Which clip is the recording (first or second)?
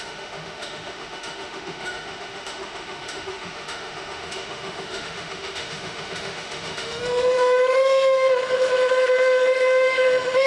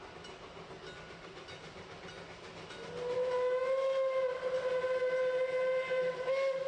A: second